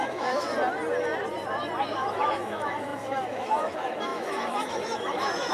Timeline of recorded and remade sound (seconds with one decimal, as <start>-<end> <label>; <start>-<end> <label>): 0.0-0.5 remade; 0.5-2.0 recorded; 2.0-5.5 remade